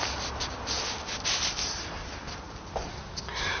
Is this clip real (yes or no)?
yes